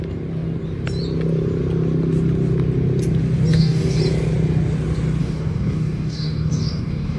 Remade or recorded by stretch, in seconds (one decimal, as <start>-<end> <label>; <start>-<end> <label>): 0.0-3.5 recorded; 3.5-4.0 remade; 4.0-5.2 recorded; 5.2-7.2 remade